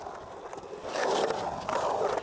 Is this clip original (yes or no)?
yes